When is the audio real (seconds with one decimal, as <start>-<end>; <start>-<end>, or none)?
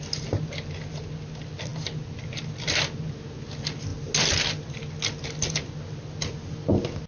0.0-7.1